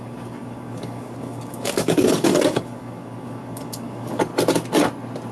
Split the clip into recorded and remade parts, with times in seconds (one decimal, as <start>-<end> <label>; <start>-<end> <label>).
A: 0.0-4.3 remade; 4.3-5.3 recorded